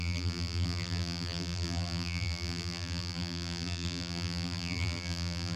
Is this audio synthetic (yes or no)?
yes